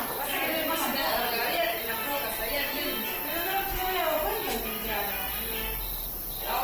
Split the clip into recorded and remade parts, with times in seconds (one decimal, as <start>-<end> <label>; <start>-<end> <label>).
0.0-6.6 recorded